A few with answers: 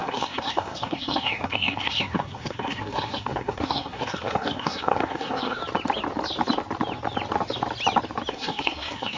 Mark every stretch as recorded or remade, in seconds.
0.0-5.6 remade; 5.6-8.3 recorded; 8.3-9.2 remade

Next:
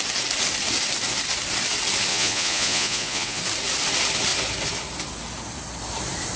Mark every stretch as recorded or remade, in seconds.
0.0-2.1 recorded; 2.1-3.4 remade; 3.4-6.4 recorded

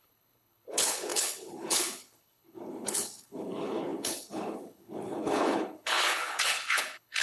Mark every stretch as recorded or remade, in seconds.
0.0-7.2 remade

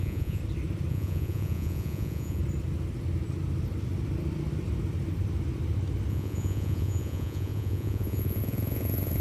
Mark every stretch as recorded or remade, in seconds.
0.0-0.4 remade; 0.4-0.9 recorded; 0.9-2.4 remade; 2.4-6.1 recorded; 6.1-9.2 remade

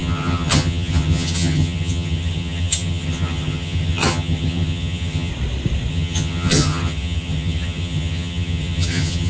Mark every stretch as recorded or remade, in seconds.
0.0-5.3 remade; 5.3-5.9 recorded; 5.9-9.3 remade

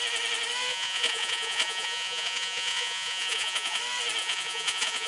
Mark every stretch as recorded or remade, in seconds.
0.0-0.7 recorded; 0.7-3.8 remade; 3.8-4.2 recorded; 4.2-5.1 remade

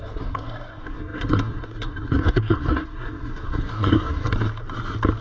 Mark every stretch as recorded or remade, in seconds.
0.0-4.3 remade; 4.3-5.2 recorded